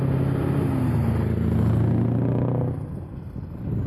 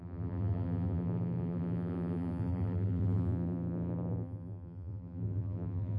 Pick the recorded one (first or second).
first